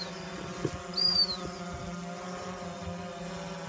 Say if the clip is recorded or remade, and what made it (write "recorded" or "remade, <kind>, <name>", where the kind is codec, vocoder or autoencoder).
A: recorded